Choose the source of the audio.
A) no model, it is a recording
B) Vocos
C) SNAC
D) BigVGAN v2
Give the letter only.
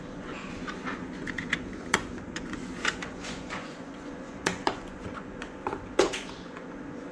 B